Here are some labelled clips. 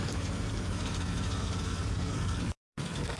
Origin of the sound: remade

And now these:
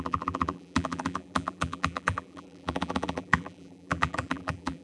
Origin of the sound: remade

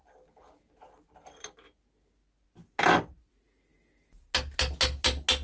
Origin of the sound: recorded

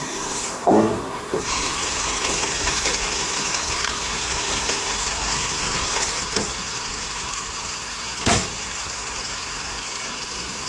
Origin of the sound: remade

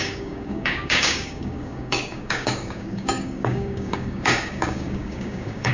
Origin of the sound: remade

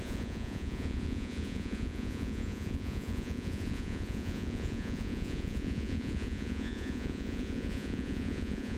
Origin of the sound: remade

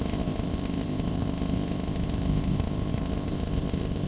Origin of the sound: remade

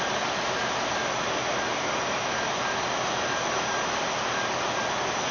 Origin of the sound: recorded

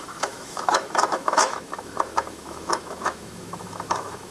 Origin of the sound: remade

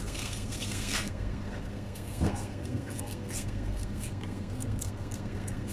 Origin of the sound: remade